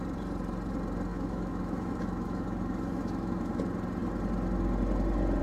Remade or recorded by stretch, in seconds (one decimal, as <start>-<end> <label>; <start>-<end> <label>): 0.0-1.1 recorded; 1.1-3.6 remade; 3.6-5.4 recorded